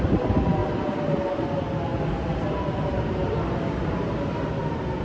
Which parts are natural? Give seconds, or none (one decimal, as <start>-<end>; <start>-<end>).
0.0-5.0

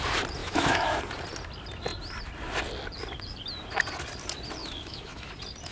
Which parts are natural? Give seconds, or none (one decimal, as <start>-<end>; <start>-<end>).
0.0-0.4; 1.0-4.6; 5.3-5.7

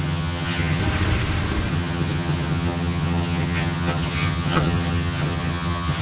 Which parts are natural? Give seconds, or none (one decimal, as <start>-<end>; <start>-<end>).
0.8-1.7

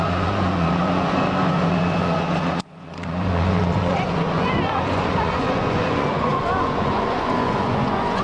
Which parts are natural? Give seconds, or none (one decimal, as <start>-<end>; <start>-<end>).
none

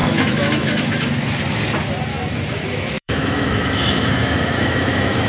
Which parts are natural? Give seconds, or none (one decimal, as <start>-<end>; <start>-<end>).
1.1-2.1

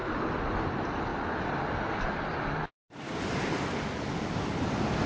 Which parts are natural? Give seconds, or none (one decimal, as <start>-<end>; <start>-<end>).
0.0-5.1